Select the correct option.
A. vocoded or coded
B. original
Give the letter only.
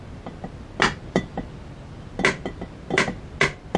B